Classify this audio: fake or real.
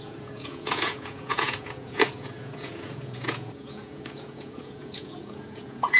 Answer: fake